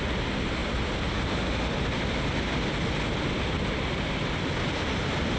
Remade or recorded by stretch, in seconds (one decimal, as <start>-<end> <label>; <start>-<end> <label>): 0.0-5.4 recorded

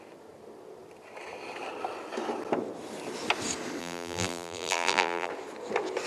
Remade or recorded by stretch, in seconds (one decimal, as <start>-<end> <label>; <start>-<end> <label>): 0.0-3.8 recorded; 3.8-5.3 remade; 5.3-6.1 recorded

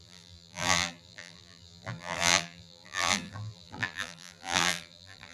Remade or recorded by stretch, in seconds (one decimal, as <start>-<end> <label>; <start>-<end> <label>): 0.0-5.3 remade

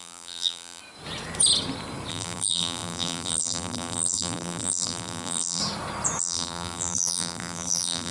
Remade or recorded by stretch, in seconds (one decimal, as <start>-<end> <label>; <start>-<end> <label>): 0.0-0.8 remade; 0.8-2.1 recorded; 2.1-5.6 remade; 5.6-6.2 recorded; 6.2-8.1 remade

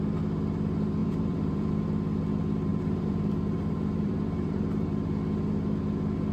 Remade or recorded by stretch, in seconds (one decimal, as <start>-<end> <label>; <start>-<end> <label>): 0.0-1.0 recorded; 1.0-1.7 remade; 1.7-2.7 recorded; 2.7-4.6 remade; 4.6-6.3 recorded